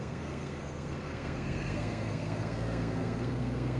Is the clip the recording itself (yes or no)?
no